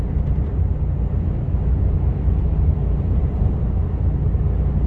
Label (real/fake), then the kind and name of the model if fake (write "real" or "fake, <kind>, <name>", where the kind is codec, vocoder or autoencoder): real